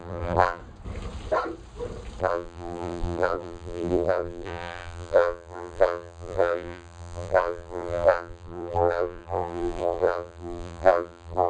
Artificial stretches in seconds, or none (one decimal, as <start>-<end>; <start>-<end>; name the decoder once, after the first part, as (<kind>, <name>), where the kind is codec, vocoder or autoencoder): 0.0-0.6 (vocoder, BigVGAN v2); 2.2-11.5